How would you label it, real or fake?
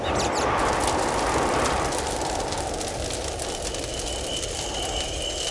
real